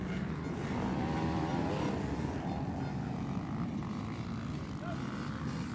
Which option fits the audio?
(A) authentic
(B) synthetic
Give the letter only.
A